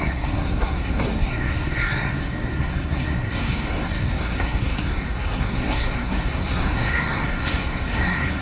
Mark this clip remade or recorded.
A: remade